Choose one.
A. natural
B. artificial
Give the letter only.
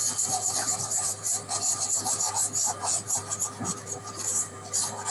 B